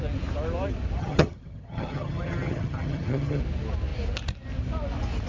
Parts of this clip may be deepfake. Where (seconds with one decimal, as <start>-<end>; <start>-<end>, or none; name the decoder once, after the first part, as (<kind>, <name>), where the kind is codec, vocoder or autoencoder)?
1.0-3.4 (vocoder, HiFi-GAN)